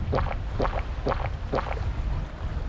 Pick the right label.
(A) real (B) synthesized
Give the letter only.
A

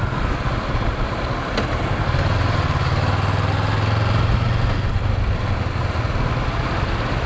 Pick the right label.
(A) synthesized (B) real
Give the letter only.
B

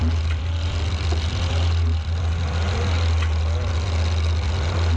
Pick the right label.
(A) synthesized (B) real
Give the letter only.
B